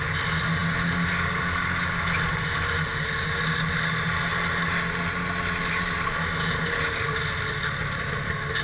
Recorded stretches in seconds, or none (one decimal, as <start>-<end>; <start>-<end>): 0.0-8.6